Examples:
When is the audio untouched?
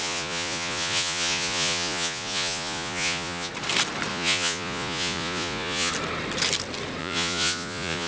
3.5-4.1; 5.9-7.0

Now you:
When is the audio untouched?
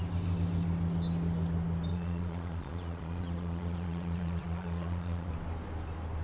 0.0-1.9; 5.3-6.2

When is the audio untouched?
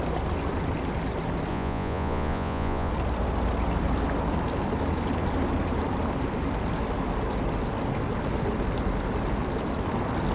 0.0-1.5; 2.9-10.3